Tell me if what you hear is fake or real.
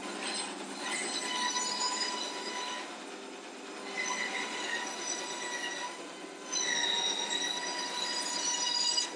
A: real